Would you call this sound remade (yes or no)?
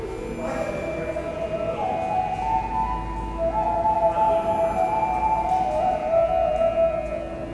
no